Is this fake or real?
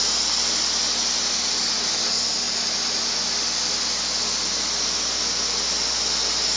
real